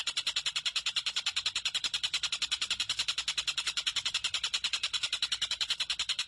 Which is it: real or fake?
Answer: real